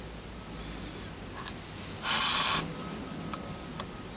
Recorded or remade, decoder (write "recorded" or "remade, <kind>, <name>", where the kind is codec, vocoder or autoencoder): recorded